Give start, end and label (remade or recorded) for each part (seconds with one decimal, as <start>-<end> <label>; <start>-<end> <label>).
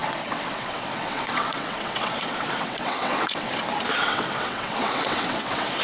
0.0-3.5 remade; 3.5-4.0 recorded; 4.0-5.8 remade